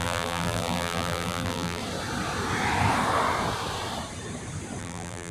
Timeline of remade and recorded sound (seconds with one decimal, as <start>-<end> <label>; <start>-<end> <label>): 0.0-1.8 remade; 1.8-4.8 recorded; 4.8-5.3 remade